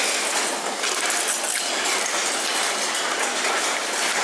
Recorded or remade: recorded